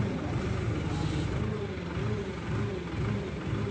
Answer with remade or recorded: recorded